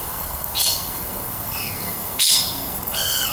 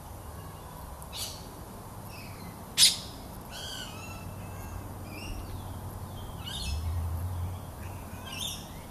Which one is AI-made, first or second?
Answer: first